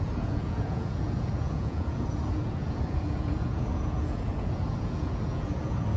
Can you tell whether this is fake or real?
fake